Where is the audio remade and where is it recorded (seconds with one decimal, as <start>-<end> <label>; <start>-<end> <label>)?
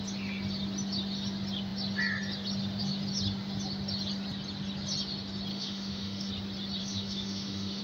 0.0-5.5 recorded; 5.5-6.3 remade; 6.3-6.8 recorded; 6.8-7.8 remade